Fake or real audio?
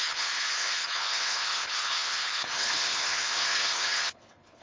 fake